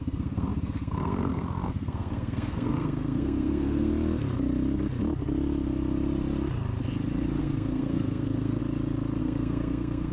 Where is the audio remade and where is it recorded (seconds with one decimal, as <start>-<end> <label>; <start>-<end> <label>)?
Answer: 0.0-3.9 remade; 3.9-7.4 recorded; 7.4-8.6 remade; 8.6-9.2 recorded; 9.2-10.1 remade